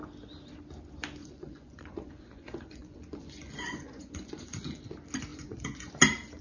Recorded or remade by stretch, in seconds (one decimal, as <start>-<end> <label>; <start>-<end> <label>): 0.0-1.2 recorded; 1.2-4.8 remade; 4.8-5.3 recorded; 5.3-5.9 remade; 5.9-6.4 recorded